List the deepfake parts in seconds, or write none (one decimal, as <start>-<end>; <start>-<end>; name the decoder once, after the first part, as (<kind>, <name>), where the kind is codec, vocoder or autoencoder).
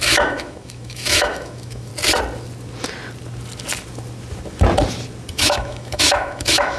0.0-1.9 (autoencoder, DAC-VAE); 5.3-6.8